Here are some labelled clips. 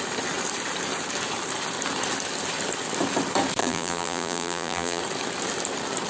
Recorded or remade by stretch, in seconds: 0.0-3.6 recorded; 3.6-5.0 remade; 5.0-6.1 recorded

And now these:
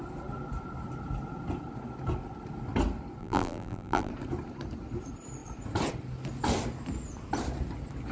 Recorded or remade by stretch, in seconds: 0.0-3.2 recorded; 3.2-4.1 remade; 4.1-8.1 recorded

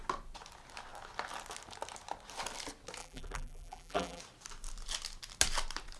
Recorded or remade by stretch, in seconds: 0.0-3.0 recorded; 3.0-4.2 remade; 4.2-6.0 recorded